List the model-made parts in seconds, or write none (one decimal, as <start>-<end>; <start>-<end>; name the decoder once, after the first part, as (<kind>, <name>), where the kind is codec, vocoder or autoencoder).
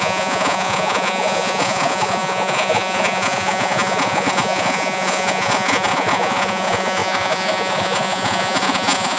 0.0-9.2 (vocoder, Vocos)